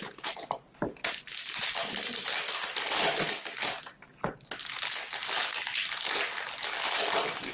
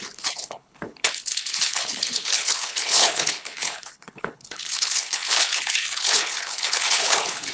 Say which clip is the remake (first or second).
second